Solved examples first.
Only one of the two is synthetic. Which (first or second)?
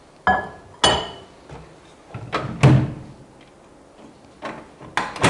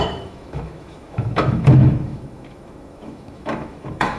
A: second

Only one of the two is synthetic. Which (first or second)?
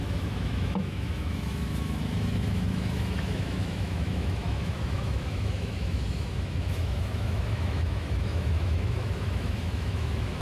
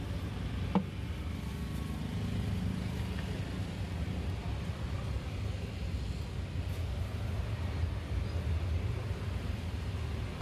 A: first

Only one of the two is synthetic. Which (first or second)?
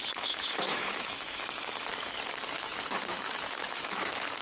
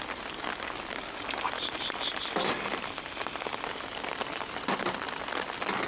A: first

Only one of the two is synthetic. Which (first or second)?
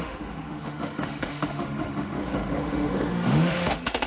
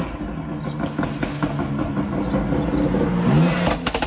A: first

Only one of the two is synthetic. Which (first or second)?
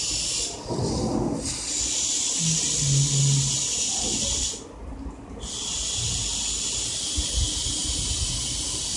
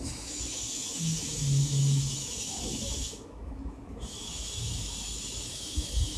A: second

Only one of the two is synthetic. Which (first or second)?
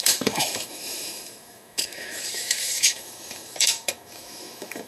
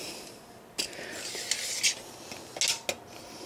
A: first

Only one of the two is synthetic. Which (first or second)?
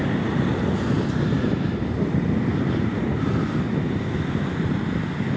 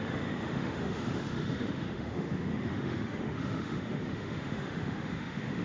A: second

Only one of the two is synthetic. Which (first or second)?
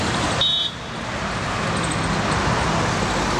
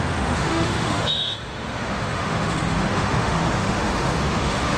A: second